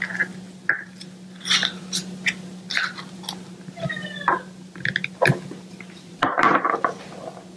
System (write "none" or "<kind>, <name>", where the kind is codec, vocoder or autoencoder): none